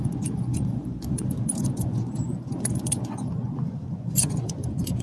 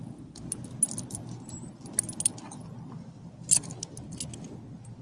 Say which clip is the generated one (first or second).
first